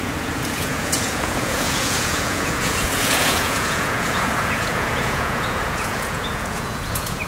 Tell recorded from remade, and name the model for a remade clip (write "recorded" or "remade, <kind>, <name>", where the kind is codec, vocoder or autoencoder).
remade, vocoder, Vocos